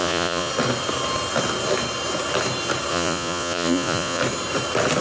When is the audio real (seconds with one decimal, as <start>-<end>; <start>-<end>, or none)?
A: 0.5-2.9; 4.2-5.0

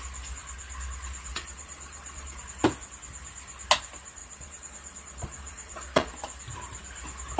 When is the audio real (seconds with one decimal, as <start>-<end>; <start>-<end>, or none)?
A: 0.0-1.3; 2.4-4.2; 6.1-7.4

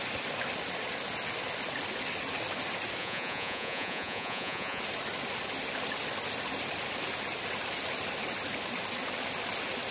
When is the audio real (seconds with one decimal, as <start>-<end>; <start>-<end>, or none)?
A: 0.0-3.0; 4.8-9.9

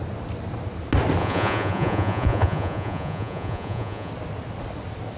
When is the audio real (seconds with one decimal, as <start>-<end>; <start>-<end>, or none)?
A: 0.0-1.2; 4.1-5.2

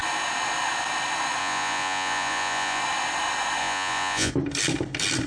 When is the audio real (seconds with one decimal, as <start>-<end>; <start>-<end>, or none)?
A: 0.0-1.4; 2.8-3.6; 4.3-5.3

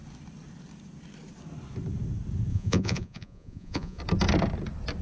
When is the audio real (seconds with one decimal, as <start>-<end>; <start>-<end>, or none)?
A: 0.0-2.5; 4.0-5.0